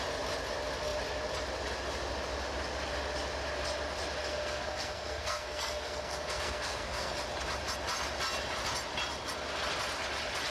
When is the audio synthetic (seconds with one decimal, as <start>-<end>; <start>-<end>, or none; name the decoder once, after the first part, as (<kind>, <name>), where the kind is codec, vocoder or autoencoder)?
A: 4.2-7.2 (codec, SNAC)